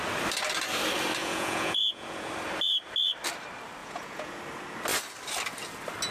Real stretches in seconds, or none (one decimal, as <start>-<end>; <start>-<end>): 0.0-1.2; 2.3-3.8; 4.4-6.1